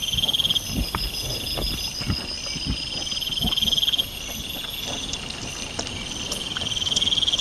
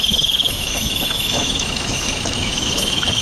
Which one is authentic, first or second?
first